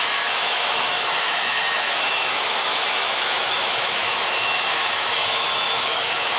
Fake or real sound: fake